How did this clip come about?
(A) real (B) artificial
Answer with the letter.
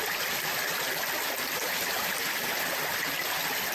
A